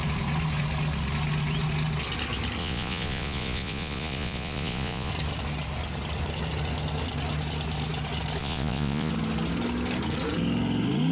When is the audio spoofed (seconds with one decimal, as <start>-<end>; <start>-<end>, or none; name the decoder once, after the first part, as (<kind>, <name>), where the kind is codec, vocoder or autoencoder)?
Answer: 2.6-5.1 (vocoder, Vocos); 8.4-9.1